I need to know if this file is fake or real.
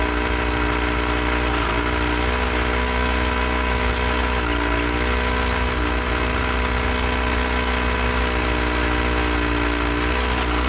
real